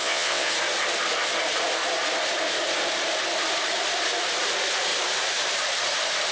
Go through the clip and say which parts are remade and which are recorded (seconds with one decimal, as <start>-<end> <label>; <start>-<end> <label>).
0.0-0.5 remade; 0.5-6.3 recorded